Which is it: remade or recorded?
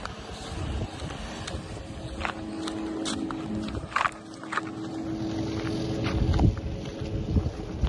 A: recorded